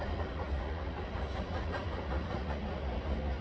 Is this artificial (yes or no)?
yes